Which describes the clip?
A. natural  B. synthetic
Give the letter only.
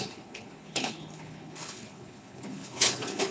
B